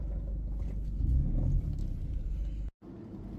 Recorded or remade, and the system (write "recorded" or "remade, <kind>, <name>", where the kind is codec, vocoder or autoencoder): recorded